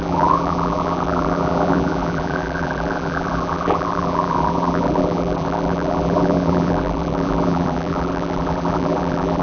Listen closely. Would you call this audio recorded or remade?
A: remade